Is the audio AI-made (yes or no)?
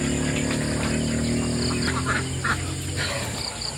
no